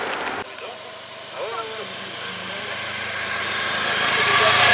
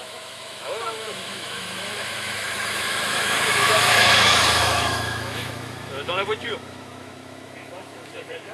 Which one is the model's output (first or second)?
second